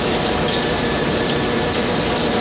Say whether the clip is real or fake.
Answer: fake